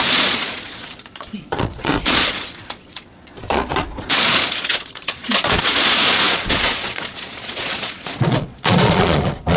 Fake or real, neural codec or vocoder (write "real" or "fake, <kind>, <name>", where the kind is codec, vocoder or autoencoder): fake, vocoder, Vocos